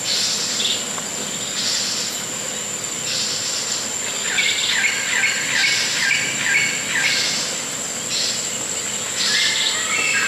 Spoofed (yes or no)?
no